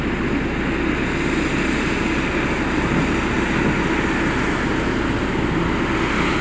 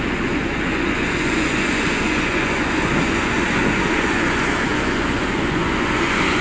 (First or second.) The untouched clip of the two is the first